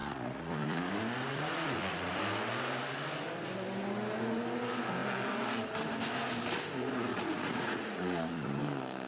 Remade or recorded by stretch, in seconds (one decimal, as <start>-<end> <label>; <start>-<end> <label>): 0.0-0.9 remade; 0.9-1.3 recorded; 1.3-2.2 remade; 2.2-7.1 recorded; 7.1-8.6 remade; 8.6-9.1 recorded